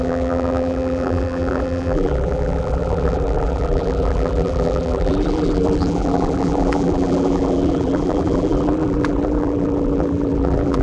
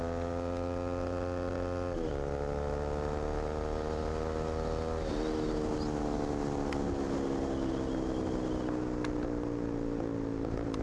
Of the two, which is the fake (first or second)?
first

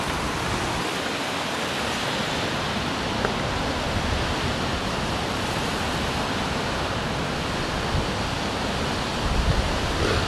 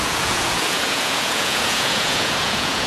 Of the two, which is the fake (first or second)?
second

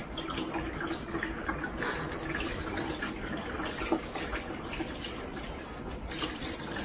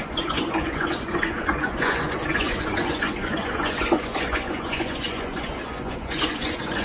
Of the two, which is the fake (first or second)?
second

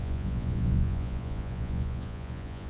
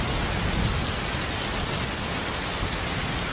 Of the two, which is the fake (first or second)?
first